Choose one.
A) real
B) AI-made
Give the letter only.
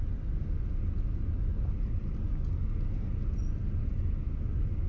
A